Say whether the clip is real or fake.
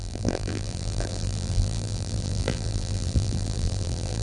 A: fake